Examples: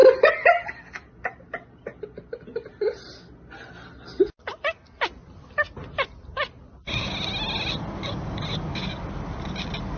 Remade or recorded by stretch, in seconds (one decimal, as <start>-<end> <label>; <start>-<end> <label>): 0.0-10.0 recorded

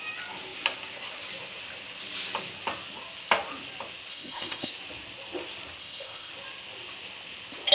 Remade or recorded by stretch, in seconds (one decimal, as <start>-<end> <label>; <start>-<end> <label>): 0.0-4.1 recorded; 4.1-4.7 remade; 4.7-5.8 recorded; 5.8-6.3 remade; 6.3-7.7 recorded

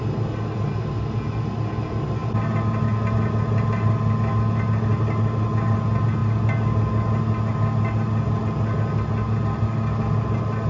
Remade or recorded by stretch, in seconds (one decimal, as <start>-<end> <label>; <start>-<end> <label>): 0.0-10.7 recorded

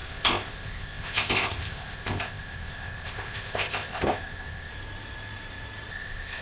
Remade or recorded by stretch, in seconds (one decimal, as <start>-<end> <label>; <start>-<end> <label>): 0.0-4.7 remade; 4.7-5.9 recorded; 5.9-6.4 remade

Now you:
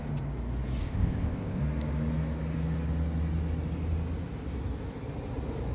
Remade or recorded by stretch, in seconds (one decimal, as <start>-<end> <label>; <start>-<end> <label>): 0.0-0.8 recorded; 0.8-1.6 remade; 1.6-5.7 recorded

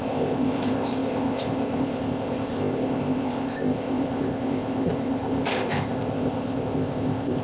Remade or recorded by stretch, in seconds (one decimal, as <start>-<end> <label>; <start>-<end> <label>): 0.0-7.4 remade

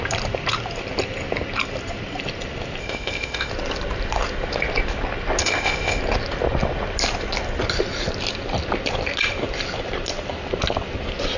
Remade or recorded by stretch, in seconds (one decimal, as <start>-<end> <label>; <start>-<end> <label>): 0.0-2.8 recorded; 2.8-3.5 remade; 3.5-5.4 recorded; 5.4-6.0 remade; 6.0-11.4 recorded